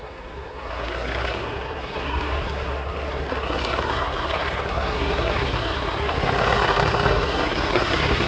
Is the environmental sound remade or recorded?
remade